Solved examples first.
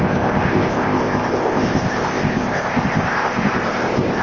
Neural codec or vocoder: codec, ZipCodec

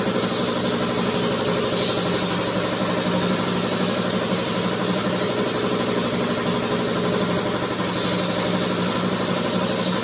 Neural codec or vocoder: none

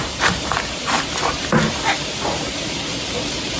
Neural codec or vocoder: vocoder, BigVGAN v2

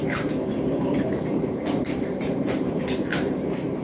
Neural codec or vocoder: vocoder, BigVGAN v2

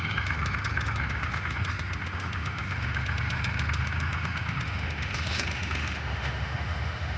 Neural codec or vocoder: autoencoder, DAC-VAE